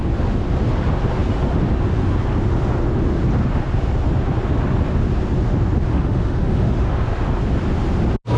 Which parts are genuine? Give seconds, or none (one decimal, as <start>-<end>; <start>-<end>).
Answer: 0.0-5.9; 6.9-8.4